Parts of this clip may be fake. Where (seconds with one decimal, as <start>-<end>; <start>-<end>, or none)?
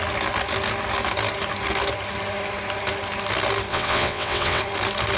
3.7-4.6